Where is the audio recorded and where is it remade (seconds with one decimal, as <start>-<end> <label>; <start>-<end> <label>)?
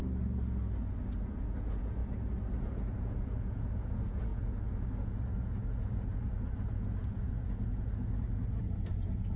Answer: 0.0-1.3 recorded; 1.3-2.0 remade; 2.0-2.6 recorded; 2.6-7.9 remade; 7.9-8.6 recorded; 8.6-9.4 remade